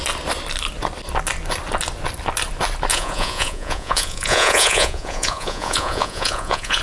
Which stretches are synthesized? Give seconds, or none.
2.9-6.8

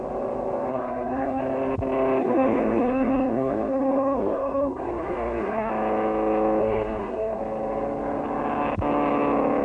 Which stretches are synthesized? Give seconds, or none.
0.7-1.4; 2.2-5.7; 6.6-7.4

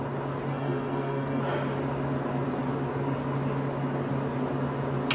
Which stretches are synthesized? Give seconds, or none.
0.5-1.4